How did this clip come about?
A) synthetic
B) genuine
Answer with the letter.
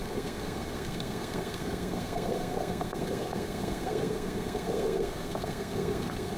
A